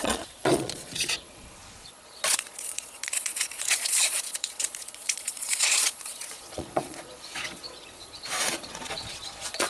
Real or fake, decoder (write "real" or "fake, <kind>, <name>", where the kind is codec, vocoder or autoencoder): fake, vocoder, Vocos